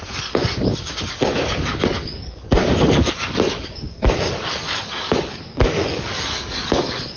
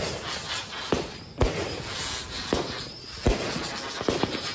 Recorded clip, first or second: second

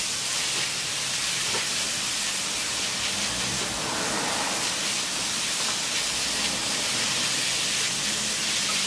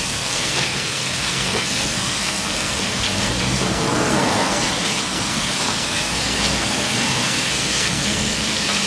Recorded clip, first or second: first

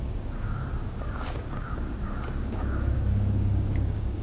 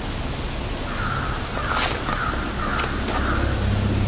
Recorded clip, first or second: second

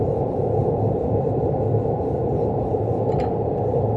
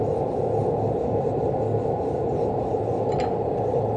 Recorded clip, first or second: second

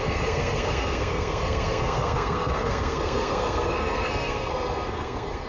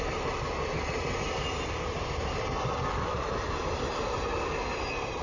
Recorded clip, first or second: second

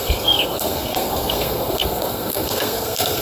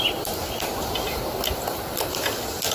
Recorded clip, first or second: second